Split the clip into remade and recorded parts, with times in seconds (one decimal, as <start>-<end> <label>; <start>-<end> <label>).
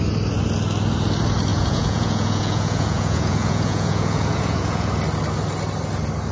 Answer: 0.0-1.5 recorded; 1.5-4.9 remade; 4.9-6.3 recorded